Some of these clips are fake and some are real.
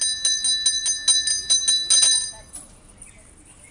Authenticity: real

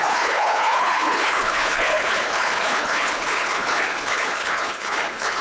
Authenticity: fake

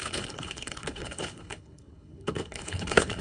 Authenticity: fake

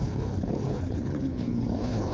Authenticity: fake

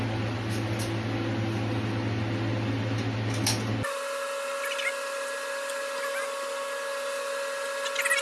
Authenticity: real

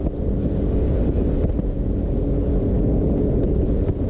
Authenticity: real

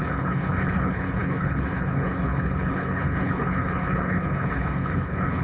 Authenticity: fake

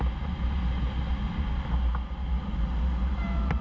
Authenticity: real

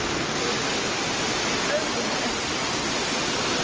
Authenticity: real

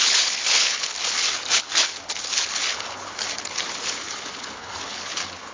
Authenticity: fake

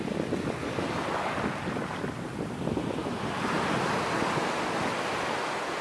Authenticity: real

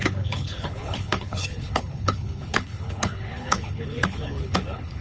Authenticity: fake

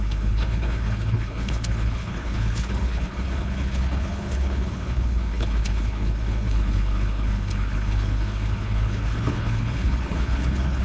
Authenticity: fake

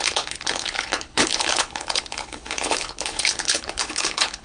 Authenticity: fake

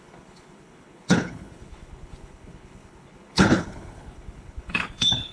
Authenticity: fake